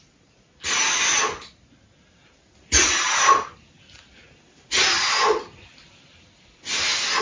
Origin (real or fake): real